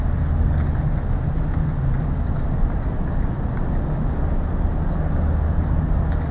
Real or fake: real